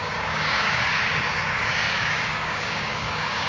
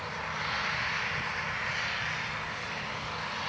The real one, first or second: second